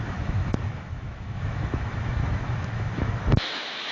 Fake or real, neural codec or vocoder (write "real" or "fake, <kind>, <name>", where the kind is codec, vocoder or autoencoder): fake, autoencoder, DAC-VAE